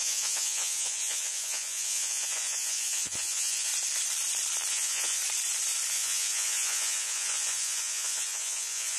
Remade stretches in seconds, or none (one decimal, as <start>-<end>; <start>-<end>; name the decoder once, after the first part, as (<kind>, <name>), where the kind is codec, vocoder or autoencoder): 0.0-3.7 (vocoder, Vocos); 4.7-5.2; 5.9-9.0